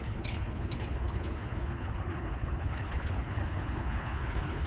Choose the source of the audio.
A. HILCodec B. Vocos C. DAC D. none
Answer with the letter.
A